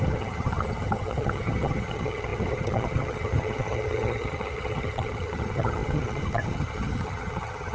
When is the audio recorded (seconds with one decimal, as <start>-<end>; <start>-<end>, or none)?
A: none